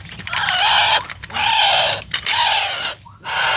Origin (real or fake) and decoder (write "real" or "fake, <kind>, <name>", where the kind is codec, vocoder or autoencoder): real